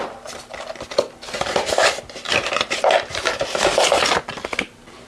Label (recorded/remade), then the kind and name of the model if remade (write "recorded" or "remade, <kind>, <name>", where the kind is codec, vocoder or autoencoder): recorded